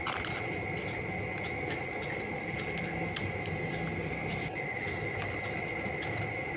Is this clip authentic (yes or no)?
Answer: yes